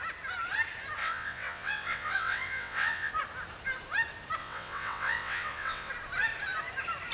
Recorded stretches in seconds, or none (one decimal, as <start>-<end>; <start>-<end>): 0.0-1.0; 3.1-4.4; 5.9-7.1